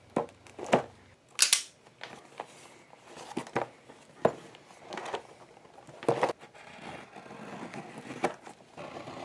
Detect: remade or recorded recorded